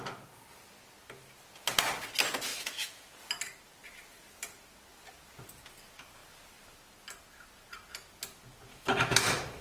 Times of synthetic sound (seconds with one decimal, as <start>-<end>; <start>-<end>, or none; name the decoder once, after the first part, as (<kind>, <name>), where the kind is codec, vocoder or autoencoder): 2.5-3.1 (autoencoder, DAC-VAE); 8.7-9.6